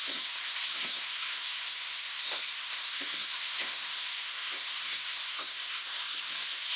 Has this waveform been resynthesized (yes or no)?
yes